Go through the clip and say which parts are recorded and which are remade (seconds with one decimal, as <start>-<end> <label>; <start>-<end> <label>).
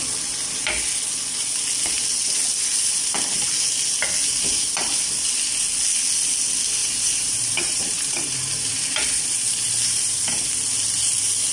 0.0-6.8 recorded; 6.8-10.5 remade; 10.5-11.5 recorded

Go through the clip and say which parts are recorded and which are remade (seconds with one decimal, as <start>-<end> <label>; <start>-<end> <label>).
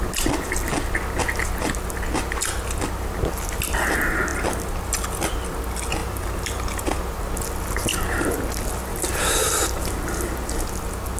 0.0-6.0 recorded; 6.0-7.3 remade; 7.3-7.9 recorded; 7.9-8.4 remade; 8.4-8.9 recorded; 8.9-9.6 remade; 9.6-11.2 recorded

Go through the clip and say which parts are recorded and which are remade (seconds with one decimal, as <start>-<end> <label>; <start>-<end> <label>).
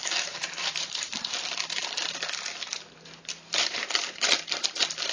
0.0-1.5 remade; 1.5-3.3 recorded; 3.3-4.1 remade; 4.1-5.1 recorded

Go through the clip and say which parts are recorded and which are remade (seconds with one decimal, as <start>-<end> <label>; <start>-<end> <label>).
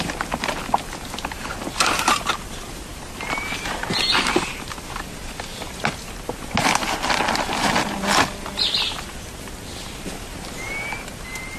0.0-2.9 recorded; 2.9-4.7 remade; 4.7-11.6 recorded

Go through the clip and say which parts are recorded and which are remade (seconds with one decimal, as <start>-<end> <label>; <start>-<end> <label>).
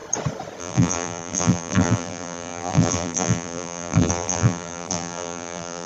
0.0-0.6 recorded; 0.6-5.9 remade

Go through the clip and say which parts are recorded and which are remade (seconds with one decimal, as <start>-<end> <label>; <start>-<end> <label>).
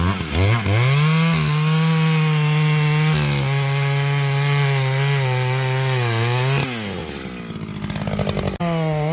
0.0-9.1 recorded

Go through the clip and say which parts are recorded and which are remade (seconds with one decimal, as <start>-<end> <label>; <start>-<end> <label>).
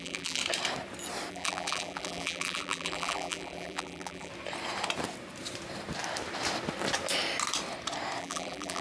0.0-0.4 remade; 0.4-1.3 recorded; 1.3-4.3 remade; 4.3-8.2 recorded; 8.2-8.8 remade